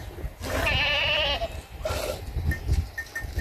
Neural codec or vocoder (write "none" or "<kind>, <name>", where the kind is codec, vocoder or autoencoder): none